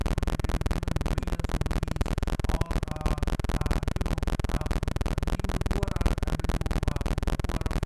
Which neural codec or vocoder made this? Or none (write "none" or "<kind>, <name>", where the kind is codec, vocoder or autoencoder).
none